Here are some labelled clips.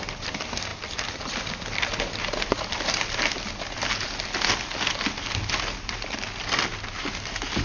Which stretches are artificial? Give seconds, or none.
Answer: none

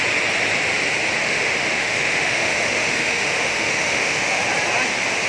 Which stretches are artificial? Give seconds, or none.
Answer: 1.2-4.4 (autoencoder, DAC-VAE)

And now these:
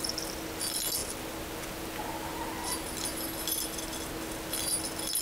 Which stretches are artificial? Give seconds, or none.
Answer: none